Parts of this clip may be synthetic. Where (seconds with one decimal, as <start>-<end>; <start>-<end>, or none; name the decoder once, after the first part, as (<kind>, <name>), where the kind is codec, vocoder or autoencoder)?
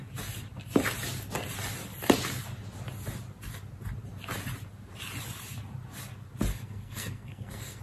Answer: 6.5-7.8 (codec, SNAC)